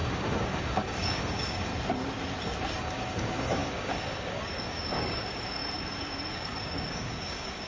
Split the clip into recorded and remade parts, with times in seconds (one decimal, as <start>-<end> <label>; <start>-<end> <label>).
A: 0.0-1.7 remade; 1.7-2.8 recorded; 2.8-5.6 remade; 5.6-6.3 recorded; 6.3-7.7 remade